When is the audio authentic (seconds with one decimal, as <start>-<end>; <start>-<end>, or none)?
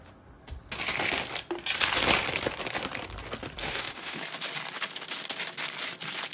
0.0-3.6; 4.2-6.3